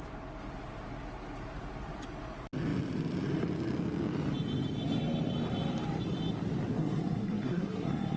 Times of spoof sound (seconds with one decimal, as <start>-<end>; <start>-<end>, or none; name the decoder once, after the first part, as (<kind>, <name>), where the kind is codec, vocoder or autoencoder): 6.7-8.2 (codec, SNAC)